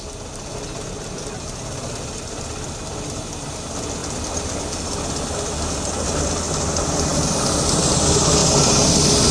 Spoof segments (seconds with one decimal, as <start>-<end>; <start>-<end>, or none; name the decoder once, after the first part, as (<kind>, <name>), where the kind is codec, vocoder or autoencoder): none